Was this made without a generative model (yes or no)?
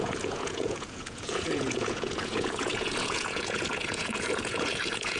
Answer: no